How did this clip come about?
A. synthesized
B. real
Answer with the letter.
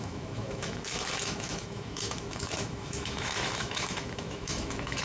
A